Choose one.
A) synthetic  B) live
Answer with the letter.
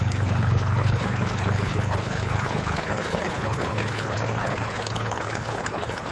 A